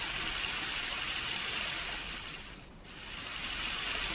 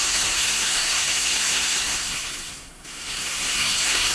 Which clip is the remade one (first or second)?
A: second